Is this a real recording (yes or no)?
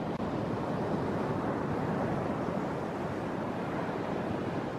yes